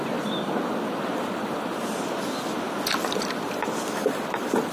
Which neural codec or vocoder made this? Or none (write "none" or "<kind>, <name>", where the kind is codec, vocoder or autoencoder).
none